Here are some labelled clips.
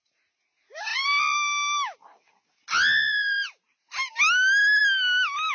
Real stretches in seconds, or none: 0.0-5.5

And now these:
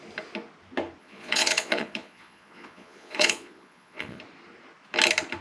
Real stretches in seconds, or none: 0.0-1.0; 4.2-5.4